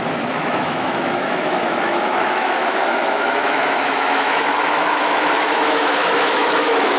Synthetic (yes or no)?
yes